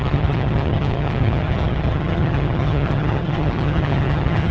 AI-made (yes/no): yes